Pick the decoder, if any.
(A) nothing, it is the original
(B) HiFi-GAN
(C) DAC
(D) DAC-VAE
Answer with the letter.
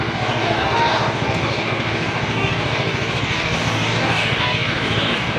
C